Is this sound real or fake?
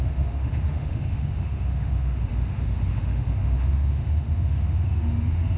fake